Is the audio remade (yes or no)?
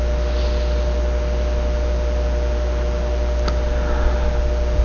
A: no